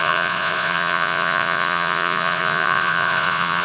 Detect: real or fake fake